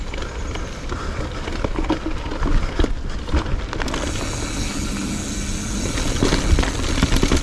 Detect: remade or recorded recorded